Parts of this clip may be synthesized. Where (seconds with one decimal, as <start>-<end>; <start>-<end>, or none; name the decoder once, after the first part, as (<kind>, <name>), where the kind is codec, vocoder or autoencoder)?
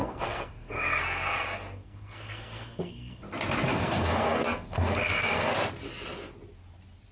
0.0-3.3 (codec, SNAC); 3.7-5.5